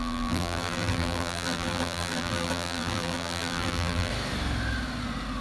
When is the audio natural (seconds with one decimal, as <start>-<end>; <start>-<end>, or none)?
4.1-5.4